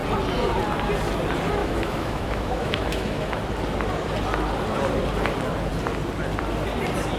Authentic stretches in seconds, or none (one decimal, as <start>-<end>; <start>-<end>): 0.0-1.6; 3.4-7.2